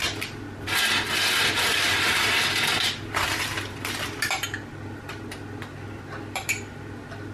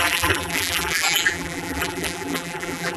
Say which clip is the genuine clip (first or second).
first